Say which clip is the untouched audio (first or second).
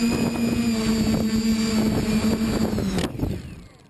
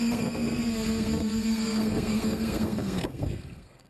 first